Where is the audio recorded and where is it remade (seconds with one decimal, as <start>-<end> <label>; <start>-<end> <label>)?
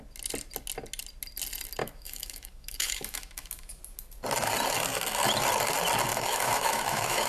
0.0-1.8 recorded; 1.8-3.8 remade; 3.8-6.1 recorded; 6.1-7.3 remade